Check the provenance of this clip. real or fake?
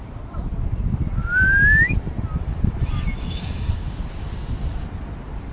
real